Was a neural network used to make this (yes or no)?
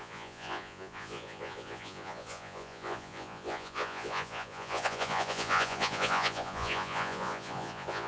yes